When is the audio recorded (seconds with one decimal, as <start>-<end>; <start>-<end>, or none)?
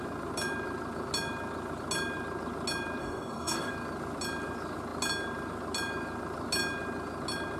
0.0-3.0; 3.7-7.6